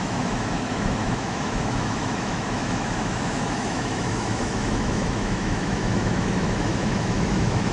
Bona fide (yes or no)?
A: no